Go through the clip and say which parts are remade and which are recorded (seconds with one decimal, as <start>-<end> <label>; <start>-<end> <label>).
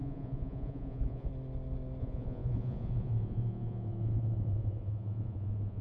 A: 0.0-1.3 remade; 1.3-2.0 recorded; 2.0-5.8 remade